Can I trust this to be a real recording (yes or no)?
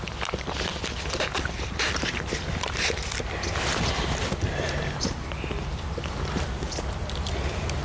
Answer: yes